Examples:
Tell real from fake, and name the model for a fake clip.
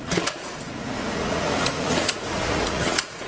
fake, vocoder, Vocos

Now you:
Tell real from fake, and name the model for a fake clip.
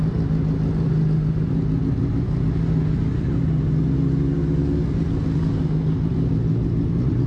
real